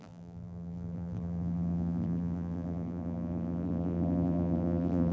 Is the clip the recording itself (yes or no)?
no